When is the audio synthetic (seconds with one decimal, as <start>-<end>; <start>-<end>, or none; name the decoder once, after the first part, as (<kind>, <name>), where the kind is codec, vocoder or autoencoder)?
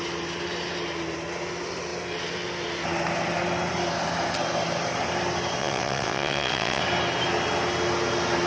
5.6-6.8 (vocoder, WaveNeXt)